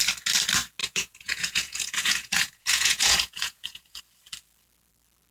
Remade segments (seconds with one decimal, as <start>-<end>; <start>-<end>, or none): 0.8-4.0